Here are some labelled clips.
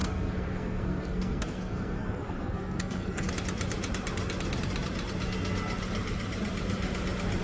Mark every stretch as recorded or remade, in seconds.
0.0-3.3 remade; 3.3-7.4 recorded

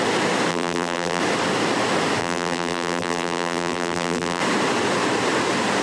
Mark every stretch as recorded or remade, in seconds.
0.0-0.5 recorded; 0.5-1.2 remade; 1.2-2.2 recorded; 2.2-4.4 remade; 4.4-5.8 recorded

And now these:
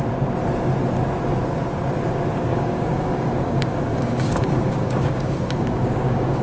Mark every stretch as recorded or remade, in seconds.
0.0-2.5 recorded; 2.5-6.4 remade

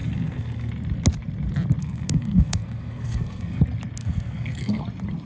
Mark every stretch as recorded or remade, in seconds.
0.0-0.7 remade; 0.7-1.8 recorded; 1.8-3.6 remade; 3.6-4.0 recorded; 4.0-4.8 remade; 4.8-5.3 recorded